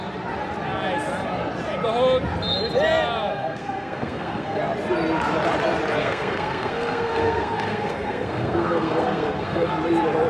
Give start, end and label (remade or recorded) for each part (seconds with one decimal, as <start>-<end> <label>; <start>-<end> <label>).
0.0-3.3 recorded; 3.3-4.6 remade; 4.6-6.0 recorded; 6.0-9.7 remade; 9.7-10.3 recorded

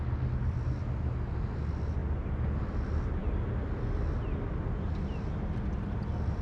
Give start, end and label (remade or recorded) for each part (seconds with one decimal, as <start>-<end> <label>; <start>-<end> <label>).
0.0-6.4 recorded

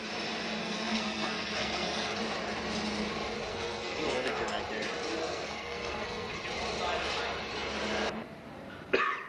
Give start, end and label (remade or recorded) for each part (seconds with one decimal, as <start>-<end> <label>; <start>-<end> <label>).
0.0-0.6 recorded; 0.6-2.2 remade; 2.2-3.5 recorded; 3.5-4.5 remade; 4.5-5.3 recorded; 5.3-6.3 remade; 6.3-9.3 recorded